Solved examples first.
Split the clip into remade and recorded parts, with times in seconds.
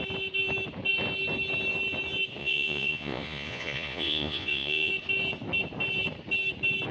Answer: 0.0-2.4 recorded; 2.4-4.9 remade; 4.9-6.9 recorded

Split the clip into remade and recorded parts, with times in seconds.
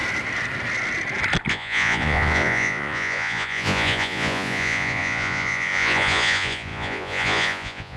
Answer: 0.0-1.5 recorded; 1.5-8.0 remade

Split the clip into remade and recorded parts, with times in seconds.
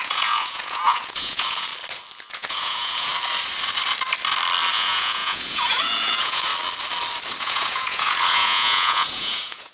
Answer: 0.0-1.7 remade; 1.7-2.3 recorded; 2.3-3.1 remade; 3.1-4.7 recorded; 4.7-6.5 remade; 6.5-7.4 recorded; 7.4-9.7 remade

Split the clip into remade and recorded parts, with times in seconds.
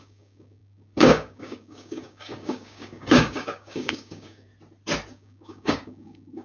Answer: 0.0-4.5 remade; 4.5-5.1 recorded; 5.1-6.4 remade